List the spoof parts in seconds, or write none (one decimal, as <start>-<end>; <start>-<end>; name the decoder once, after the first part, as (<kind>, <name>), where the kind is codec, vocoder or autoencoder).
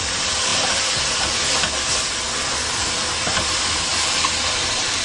3.9-5.0 (vocoder, BigVGAN v2)